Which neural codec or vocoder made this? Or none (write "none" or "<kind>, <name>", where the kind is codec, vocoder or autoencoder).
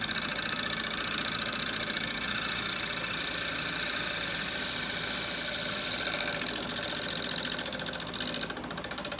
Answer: none